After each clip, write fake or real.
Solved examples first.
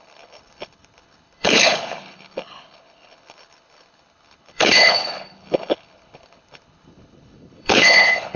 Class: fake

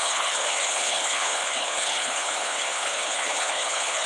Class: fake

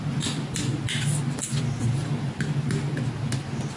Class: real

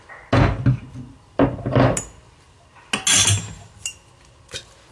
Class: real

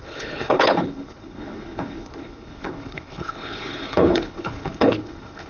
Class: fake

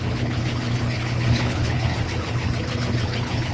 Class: fake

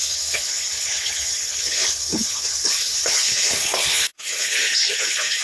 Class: fake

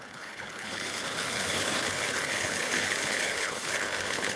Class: fake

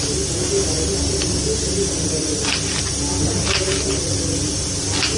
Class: real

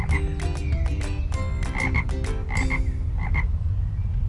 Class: real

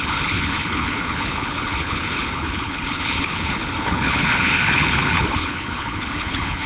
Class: fake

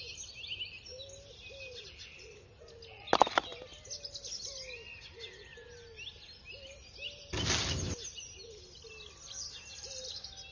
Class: real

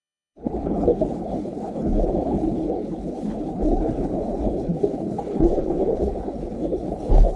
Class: fake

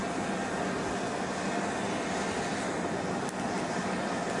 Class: real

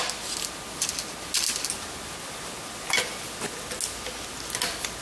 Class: real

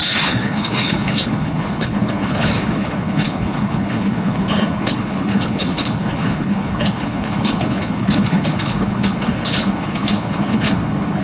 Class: fake